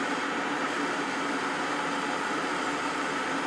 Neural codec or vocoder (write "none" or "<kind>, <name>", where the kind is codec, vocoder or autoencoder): none